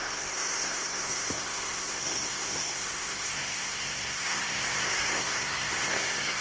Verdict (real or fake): fake